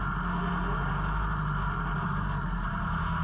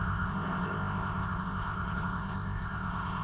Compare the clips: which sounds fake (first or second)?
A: second